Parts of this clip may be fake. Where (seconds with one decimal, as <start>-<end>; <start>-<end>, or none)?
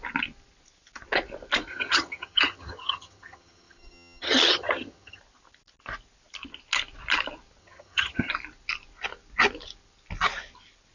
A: 1.7-5.2; 7.6-8.3